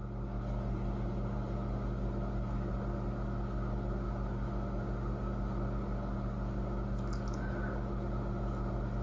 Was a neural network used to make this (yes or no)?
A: no